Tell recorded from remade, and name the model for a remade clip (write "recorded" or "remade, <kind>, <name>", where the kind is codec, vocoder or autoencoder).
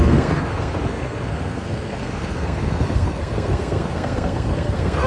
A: remade, codec, SNAC